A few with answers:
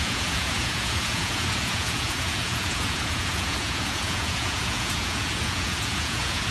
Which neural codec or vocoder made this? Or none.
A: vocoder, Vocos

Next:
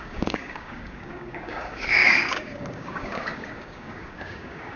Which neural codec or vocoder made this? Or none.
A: codec, DAC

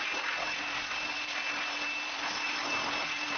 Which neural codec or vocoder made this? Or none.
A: none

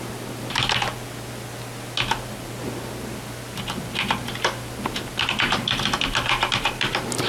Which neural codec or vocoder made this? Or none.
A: none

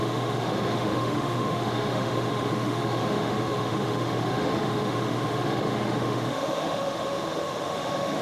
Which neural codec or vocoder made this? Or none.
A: autoencoder, DAC-VAE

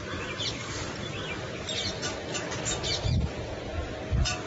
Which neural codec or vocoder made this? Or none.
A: none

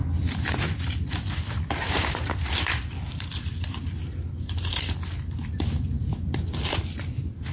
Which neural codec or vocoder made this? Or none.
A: none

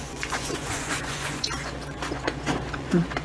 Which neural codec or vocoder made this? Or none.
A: vocoder, Vocos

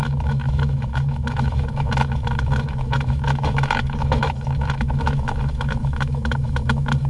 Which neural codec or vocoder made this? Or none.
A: autoencoder, DAC-VAE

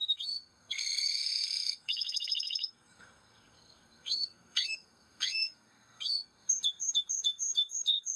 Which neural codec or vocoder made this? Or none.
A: codec, SNAC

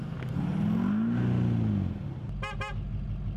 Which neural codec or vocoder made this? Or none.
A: none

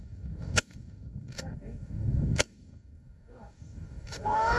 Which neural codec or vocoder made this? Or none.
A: codec, DAC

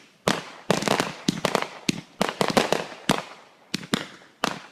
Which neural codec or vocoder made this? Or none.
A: none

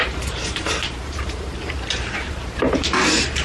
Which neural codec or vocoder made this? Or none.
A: vocoder, BigVGAN v2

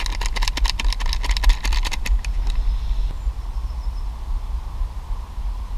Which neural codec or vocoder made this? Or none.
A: none